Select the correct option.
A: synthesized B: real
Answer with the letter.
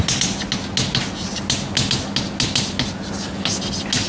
B